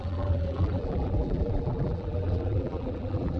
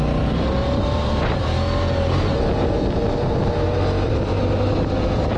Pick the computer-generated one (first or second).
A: first